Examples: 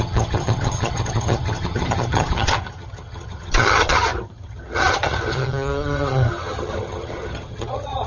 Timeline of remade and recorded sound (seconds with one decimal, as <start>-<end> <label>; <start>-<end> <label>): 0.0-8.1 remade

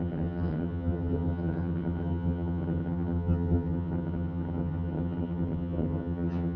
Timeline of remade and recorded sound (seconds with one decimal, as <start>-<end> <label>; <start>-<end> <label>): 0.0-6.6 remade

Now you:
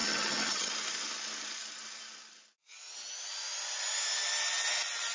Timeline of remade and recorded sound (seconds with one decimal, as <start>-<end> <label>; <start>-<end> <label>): 0.0-0.7 remade; 0.7-5.1 recorded

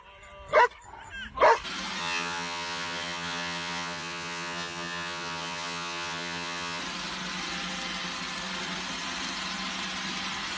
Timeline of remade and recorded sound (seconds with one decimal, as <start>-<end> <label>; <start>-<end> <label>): 0.0-2.0 recorded; 2.0-6.8 remade; 6.8-10.6 recorded

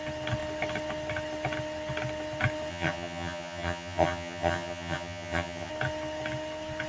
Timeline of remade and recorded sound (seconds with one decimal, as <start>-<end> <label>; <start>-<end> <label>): 0.0-2.7 recorded; 2.7-5.7 remade; 5.7-6.9 recorded

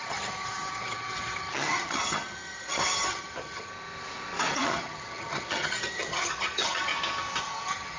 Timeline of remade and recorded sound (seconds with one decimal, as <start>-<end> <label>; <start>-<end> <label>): 0.0-3.7 remade; 3.7-4.5 recorded; 4.5-6.9 remade; 6.9-7.4 recorded; 7.4-8.0 remade